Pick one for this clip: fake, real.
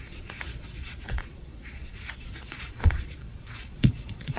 fake